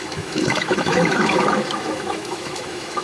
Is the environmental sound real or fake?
fake